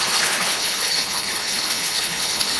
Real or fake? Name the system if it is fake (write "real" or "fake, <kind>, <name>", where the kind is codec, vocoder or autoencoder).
fake, codec, HILCodec